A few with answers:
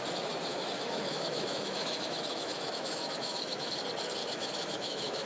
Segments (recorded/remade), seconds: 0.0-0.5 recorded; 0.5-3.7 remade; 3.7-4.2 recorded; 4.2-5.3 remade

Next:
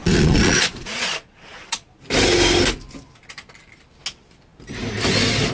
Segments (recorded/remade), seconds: 0.0-2.0 remade; 2.0-5.5 recorded

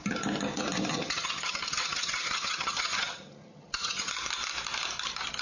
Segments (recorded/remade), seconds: 0.0-0.9 recorded; 0.9-4.1 remade; 4.1-5.4 recorded